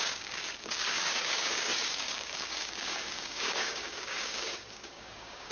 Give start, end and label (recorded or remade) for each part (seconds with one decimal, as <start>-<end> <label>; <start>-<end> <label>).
0.0-5.5 remade